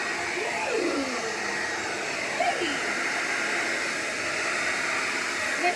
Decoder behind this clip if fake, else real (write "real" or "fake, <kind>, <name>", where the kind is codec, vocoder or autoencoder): real